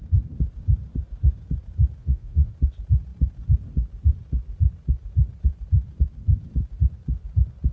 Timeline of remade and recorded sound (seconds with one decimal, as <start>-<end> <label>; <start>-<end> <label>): 0.0-2.0 recorded; 2.0-2.5 remade; 2.5-7.7 recorded